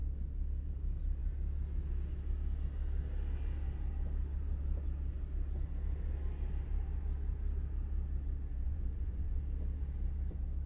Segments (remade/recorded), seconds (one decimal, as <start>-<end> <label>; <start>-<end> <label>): 0.0-8.5 recorded; 8.5-9.4 remade; 9.4-10.7 recorded